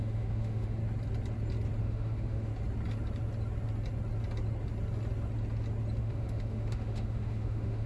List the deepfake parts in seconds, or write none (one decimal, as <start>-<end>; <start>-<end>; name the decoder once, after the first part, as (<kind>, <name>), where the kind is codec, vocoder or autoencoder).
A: 0.0-0.8 (autoencoder, DAC-VAE); 1.8-2.5; 6.0-7.9